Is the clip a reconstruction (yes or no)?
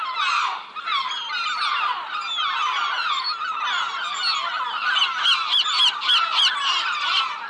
no